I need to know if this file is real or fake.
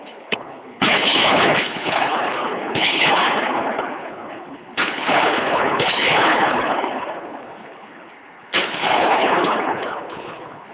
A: fake